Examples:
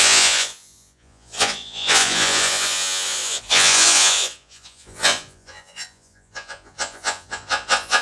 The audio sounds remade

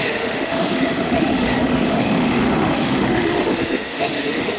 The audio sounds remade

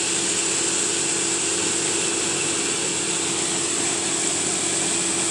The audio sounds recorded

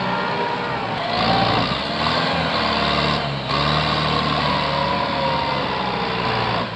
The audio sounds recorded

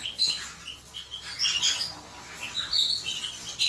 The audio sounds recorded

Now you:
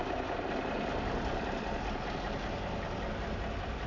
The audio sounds recorded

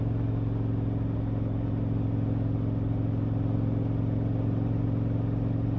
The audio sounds recorded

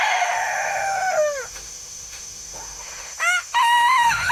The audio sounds remade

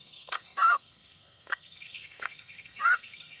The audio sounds remade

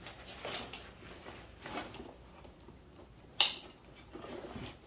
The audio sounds recorded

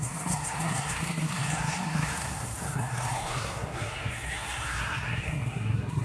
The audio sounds remade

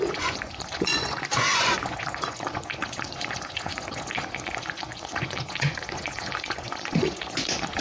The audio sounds remade